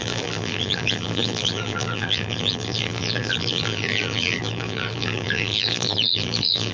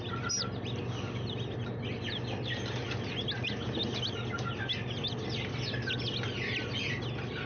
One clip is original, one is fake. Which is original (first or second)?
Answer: second